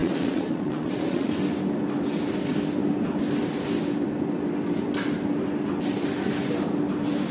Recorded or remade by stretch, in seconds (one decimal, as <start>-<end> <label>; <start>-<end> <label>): 0.0-1.3 remade; 1.3-7.3 recorded

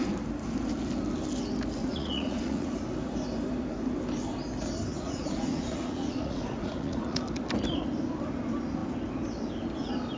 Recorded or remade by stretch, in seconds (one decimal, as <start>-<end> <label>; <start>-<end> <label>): 0.0-1.8 recorded; 1.8-2.7 remade; 2.7-4.9 recorded; 4.9-7.2 remade; 7.2-10.2 recorded